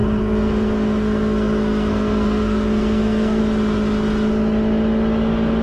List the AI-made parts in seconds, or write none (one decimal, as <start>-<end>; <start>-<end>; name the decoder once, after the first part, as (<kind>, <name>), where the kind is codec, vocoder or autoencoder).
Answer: 0.0-3.4 (codec, SNAC)